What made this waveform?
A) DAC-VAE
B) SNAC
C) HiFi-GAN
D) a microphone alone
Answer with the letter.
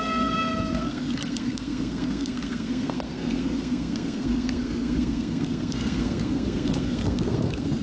B